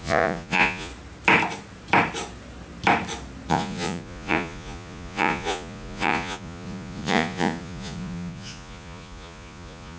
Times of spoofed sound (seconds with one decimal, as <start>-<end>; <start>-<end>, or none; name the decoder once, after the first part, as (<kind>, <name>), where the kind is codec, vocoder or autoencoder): 0.0-0.9 (vocoder, Vocos); 3.5-10.0